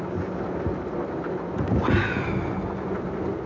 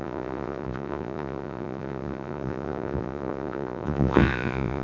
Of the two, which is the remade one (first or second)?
second